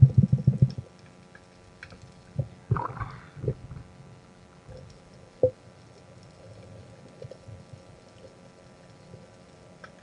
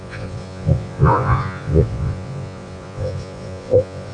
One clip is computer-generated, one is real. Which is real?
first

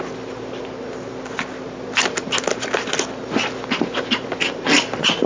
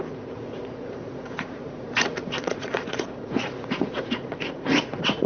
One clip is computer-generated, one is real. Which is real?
first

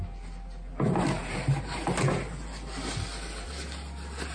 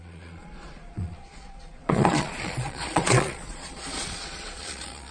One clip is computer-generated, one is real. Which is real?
first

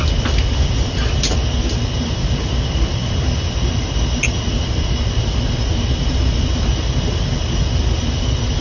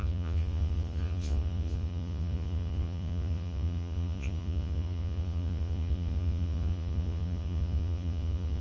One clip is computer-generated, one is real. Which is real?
first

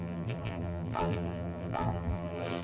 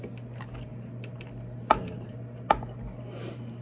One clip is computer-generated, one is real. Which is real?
second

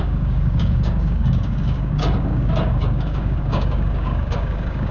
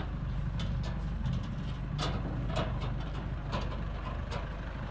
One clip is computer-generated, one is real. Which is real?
second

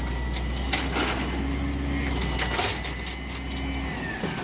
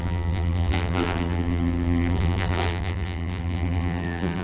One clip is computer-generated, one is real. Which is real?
first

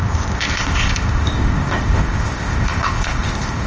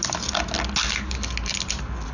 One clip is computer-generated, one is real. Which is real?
second